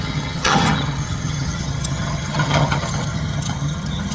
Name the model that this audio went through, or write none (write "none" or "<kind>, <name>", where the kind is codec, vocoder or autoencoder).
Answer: vocoder, HiFi-GAN